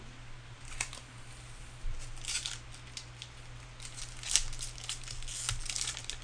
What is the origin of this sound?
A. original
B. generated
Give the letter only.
A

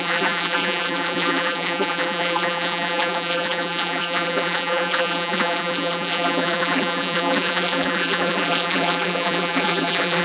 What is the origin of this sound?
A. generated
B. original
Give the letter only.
A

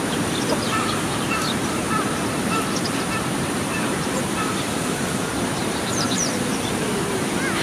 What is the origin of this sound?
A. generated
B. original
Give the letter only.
A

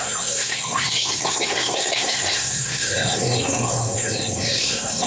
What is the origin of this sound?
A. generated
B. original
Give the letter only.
A